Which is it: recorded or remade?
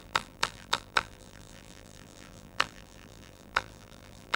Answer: remade